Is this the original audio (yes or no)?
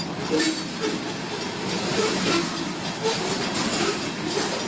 yes